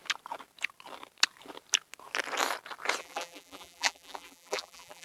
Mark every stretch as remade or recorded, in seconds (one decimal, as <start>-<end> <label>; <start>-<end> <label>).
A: 0.0-3.0 recorded; 3.0-5.0 remade